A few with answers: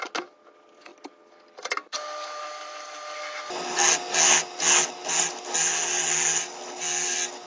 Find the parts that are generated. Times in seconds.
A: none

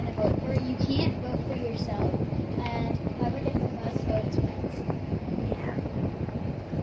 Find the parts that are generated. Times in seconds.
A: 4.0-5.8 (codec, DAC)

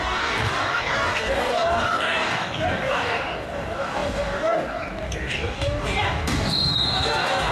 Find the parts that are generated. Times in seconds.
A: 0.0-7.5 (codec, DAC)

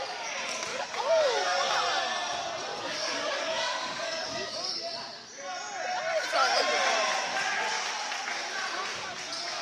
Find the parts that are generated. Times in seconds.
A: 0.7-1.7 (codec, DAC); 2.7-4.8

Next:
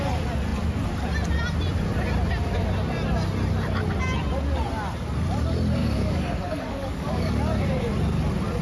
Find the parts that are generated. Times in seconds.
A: 5.8-7.3 (codec, DAC)

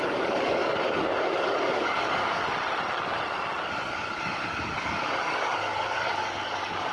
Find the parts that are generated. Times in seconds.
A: 0.0-2.4 (codec, DAC); 3.6-6.9

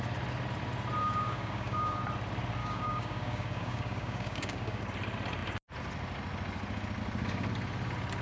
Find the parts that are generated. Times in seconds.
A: 1.0-2.0 (codec, DAC); 2.6-4.8

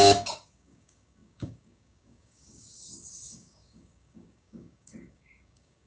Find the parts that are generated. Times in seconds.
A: 0.0-5.9 (codec, DAC)